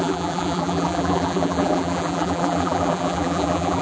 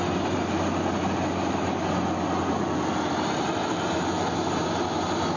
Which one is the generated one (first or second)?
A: first